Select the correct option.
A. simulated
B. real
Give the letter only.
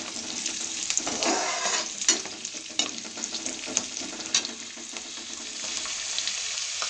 B